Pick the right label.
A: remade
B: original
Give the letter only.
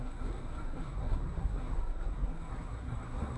A